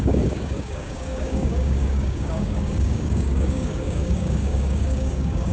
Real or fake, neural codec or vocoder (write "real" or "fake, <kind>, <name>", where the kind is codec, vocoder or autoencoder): fake, codec, DAC